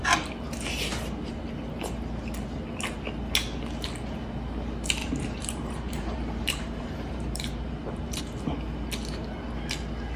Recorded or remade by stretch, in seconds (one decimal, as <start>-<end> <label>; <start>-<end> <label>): 0.0-5.0 recorded; 5.0-8.2 remade; 8.2-10.2 recorded